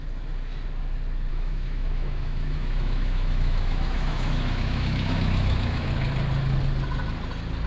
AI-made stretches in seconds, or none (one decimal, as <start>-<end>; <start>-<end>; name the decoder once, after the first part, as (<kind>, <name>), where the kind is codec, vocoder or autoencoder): 1.3-5.9 (autoencoder, DAC-VAE)